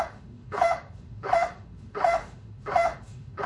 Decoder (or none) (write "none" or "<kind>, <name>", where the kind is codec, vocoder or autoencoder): autoencoder, DAC-VAE